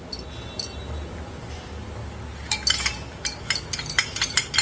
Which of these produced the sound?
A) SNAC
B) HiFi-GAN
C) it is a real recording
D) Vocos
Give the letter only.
C